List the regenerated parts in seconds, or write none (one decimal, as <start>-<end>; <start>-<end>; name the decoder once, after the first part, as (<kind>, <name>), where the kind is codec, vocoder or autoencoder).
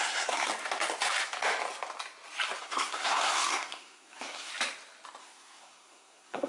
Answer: 0.0-0.5 (codec, SNAC); 2.6-4.5; 5.2-6.5